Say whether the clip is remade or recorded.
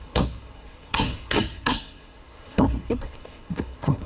remade